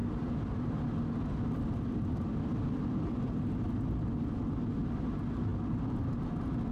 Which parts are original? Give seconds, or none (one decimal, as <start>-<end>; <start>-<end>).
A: 0.0-6.7